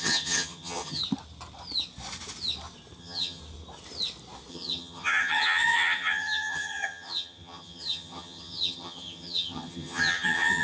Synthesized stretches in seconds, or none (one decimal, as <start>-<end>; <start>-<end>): 0.0-1.0; 3.0-3.4; 4.5-10.6